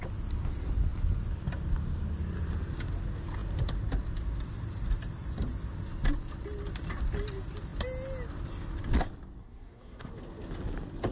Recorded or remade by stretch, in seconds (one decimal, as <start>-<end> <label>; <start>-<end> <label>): 0.0-9.4 recorded; 9.4-10.1 remade; 10.1-11.1 recorded